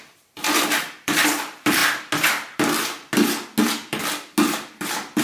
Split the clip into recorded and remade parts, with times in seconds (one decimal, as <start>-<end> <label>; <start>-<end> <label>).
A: 0.0-1.8 remade; 1.8-5.2 recorded